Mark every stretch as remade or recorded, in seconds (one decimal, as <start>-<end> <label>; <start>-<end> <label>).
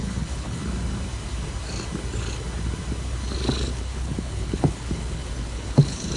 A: 0.0-0.6 remade; 0.6-3.8 recorded; 3.8-6.2 remade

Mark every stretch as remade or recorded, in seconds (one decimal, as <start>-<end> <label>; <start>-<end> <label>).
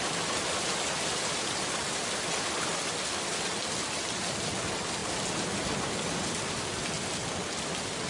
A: 0.0-8.1 recorded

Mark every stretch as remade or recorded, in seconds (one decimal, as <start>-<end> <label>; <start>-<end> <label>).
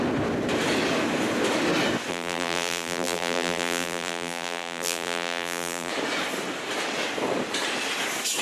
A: 0.0-2.1 recorded; 2.1-5.9 remade; 5.9-8.4 recorded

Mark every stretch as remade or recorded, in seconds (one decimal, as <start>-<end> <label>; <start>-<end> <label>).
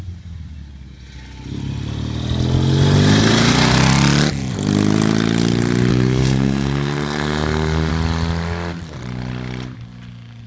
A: 0.0-5.9 recorded; 5.9-7.9 remade; 7.9-10.5 recorded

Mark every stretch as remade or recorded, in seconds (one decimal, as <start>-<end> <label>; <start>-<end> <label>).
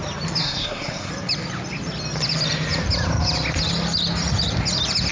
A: 0.0-0.4 recorded; 0.4-1.1 remade; 1.1-5.1 recorded